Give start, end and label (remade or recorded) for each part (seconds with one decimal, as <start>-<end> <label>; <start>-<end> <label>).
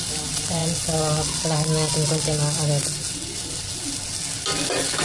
0.0-5.0 recorded